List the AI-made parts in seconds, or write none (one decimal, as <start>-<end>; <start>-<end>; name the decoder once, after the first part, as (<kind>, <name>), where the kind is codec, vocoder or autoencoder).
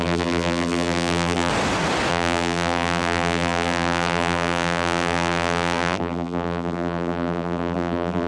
0.0-1.5 (vocoder, BigVGAN v2); 2.1-8.3